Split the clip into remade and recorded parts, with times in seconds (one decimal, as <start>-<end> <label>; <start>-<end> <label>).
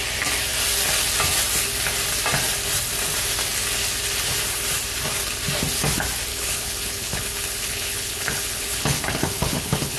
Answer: 0.0-6.3 recorded; 6.3-10.0 remade